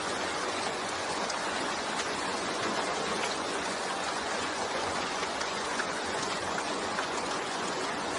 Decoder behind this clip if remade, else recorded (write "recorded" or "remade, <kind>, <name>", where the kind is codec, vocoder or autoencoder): remade, vocoder, Vocos